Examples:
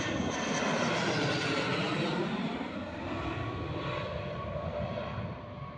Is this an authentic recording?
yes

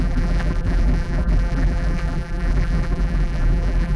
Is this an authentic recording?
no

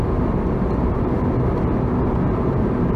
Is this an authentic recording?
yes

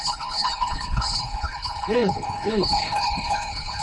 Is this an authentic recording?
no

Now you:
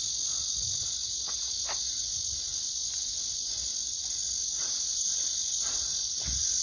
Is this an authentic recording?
no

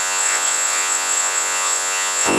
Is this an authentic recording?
no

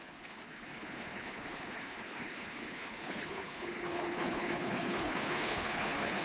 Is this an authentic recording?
no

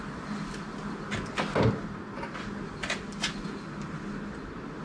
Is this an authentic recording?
yes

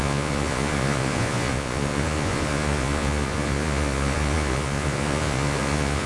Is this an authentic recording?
no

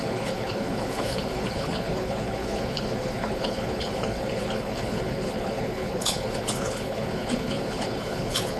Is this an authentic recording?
no